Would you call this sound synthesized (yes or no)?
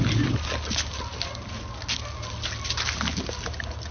no